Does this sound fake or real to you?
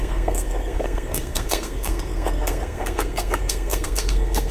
fake